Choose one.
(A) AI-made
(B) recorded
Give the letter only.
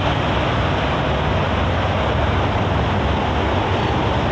B